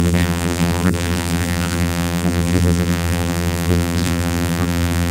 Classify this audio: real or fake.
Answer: fake